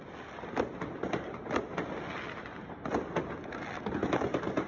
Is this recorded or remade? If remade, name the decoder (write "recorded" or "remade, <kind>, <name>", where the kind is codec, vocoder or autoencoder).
recorded